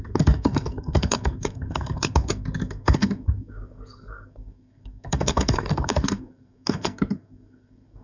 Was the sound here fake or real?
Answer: fake